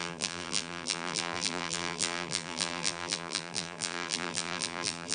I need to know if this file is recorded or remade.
remade